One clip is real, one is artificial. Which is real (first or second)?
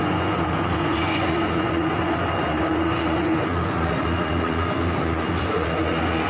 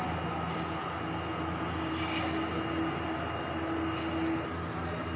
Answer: second